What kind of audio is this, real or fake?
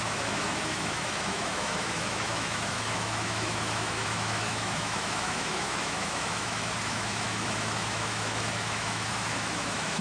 fake